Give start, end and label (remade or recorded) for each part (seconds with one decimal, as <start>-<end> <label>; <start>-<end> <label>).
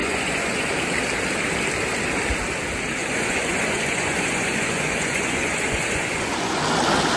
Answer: 0.0-0.7 remade; 0.7-3.0 recorded; 3.0-6.6 remade; 6.6-7.2 recorded